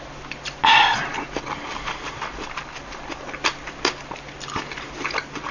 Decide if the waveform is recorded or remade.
recorded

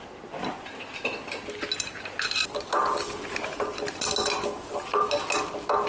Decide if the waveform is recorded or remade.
recorded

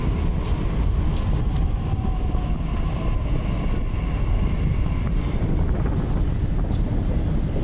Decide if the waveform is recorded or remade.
recorded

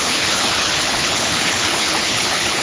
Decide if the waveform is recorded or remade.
remade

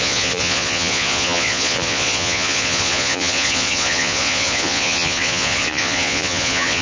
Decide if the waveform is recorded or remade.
remade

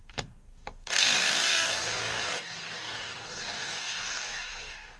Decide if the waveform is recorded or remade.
remade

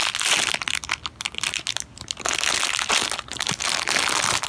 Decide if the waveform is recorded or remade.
recorded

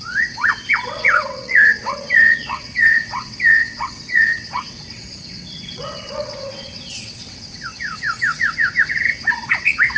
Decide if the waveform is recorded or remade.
remade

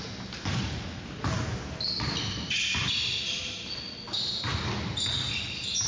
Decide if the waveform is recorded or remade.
recorded